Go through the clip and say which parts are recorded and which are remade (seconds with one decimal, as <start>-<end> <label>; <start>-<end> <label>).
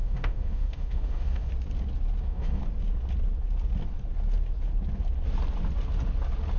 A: 0.0-1.5 remade; 1.5-2.2 recorded; 2.2-2.6 remade; 2.6-6.6 recorded